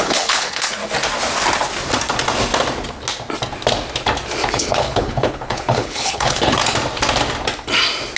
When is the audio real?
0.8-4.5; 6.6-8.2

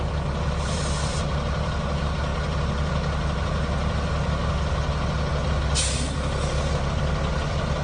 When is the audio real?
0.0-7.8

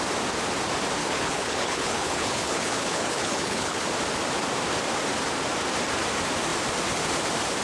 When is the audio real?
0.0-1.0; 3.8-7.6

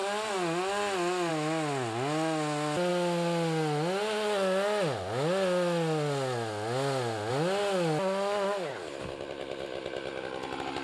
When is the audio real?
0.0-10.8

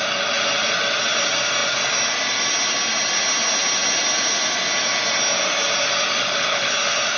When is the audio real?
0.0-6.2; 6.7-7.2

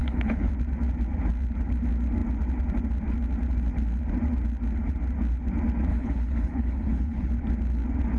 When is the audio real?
0.5-5.9; 7.3-8.2